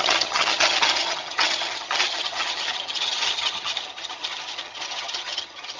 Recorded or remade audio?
remade